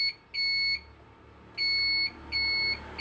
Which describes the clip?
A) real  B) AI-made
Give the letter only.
A